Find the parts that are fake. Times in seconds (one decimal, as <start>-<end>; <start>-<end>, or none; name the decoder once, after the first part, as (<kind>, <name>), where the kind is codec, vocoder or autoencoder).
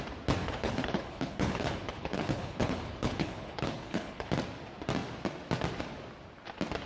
0.4-4.3 (codec, HILCodec)